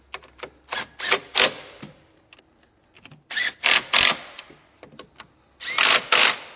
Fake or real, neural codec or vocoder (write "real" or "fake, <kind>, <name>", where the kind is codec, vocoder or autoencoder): real